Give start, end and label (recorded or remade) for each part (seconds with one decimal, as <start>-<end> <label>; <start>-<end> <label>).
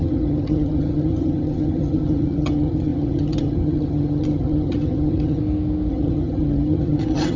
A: 0.0-5.4 remade; 5.4-5.9 recorded; 5.9-7.4 remade